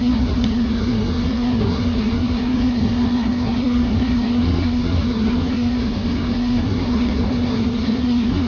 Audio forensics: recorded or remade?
remade